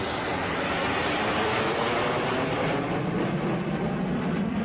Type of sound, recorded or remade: recorded